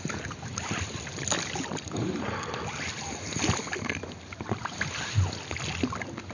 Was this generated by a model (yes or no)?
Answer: no